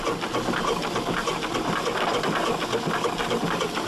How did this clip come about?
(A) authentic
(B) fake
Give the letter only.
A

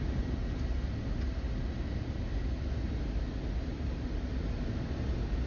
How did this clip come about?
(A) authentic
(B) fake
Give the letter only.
A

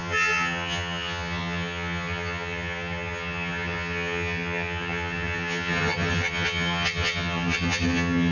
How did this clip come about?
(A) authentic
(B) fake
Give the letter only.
B